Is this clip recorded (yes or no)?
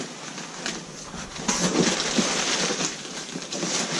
yes